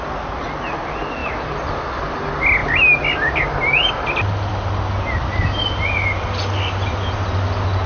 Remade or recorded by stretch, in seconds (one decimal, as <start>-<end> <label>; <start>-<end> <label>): 0.0-1.2 recorded; 1.2-1.7 remade; 1.7-7.9 recorded